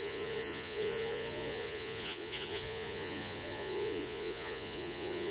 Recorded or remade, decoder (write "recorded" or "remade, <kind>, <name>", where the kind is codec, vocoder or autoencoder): remade, vocoder, Vocos